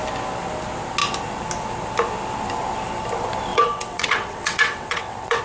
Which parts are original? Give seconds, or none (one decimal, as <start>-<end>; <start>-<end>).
0.0-3.5